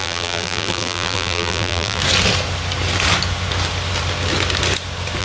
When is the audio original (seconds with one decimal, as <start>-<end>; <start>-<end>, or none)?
2.0-5.2